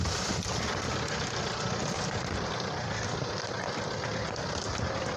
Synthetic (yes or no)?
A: no